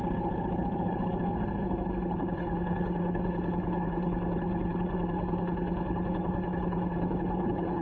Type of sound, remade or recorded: remade